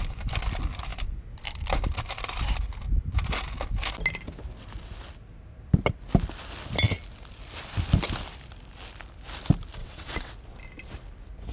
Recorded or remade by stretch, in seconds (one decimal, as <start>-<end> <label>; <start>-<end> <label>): 0.0-9.8 recorded; 9.8-10.3 remade; 10.3-11.5 recorded